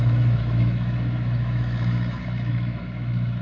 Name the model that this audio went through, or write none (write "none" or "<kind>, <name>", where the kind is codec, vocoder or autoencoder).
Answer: autoencoder, DAC-VAE